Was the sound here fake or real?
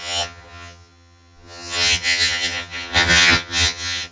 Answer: fake